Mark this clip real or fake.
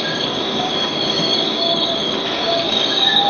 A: fake